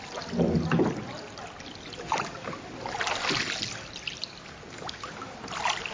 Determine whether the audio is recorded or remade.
recorded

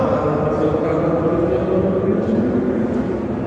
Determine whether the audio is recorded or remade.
recorded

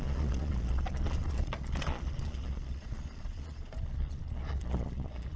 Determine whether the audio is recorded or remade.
remade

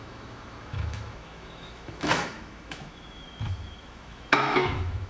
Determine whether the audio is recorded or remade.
remade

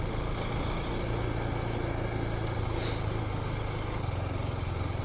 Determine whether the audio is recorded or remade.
recorded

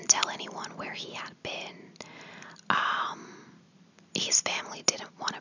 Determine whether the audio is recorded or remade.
recorded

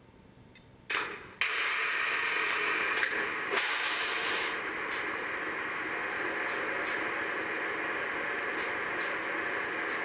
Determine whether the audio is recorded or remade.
recorded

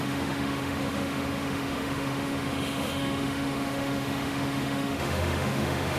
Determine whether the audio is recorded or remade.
remade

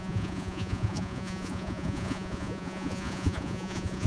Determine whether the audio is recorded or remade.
remade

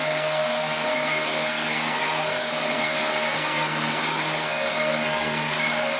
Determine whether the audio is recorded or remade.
remade